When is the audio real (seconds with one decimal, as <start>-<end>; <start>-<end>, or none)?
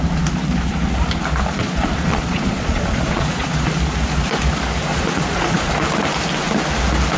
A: 0.0-1.6; 3.7-4.9; 5.7-7.2